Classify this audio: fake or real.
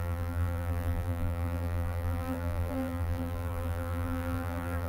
fake